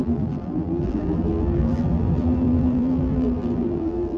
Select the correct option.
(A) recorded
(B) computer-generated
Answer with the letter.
B